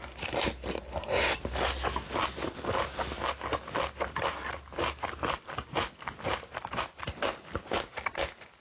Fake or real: real